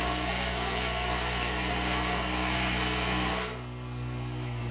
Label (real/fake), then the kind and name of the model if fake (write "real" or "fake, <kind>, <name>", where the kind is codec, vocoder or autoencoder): fake, codec, SNAC